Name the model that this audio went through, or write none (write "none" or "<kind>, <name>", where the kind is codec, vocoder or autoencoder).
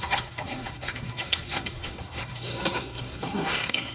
codec, SNAC